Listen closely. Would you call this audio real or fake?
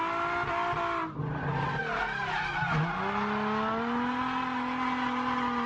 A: real